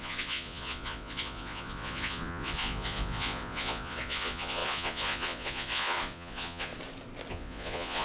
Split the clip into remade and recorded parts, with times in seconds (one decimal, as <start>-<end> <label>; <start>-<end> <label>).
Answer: 0.0-6.7 remade; 6.7-7.3 recorded; 7.3-8.0 remade